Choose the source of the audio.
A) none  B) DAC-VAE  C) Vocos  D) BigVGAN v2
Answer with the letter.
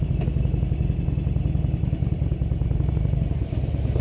D